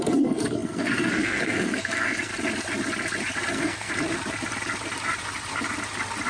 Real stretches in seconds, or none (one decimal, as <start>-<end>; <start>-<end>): 2.3-3.5; 3.9-6.3